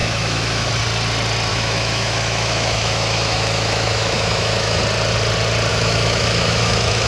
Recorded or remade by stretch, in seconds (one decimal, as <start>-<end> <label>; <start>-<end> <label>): 0.0-0.7 remade; 0.7-1.5 recorded; 1.5-4.8 remade; 4.8-5.7 recorded; 5.7-7.1 remade